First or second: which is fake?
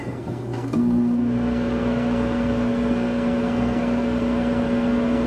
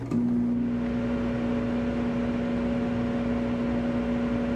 first